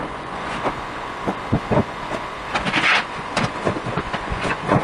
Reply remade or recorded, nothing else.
remade